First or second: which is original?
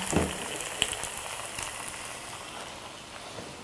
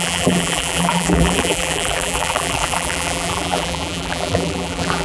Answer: first